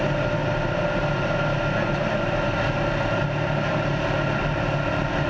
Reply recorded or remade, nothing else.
recorded